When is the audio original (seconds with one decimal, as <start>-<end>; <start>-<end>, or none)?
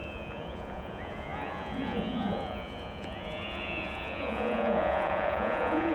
none